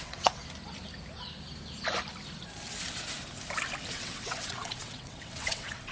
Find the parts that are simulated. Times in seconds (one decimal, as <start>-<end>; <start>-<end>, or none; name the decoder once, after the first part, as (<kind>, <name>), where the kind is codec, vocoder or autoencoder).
0.0-0.4 (vocoder, WaveNeXt); 3.9-5.9